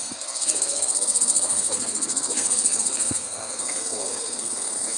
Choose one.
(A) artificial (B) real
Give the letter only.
A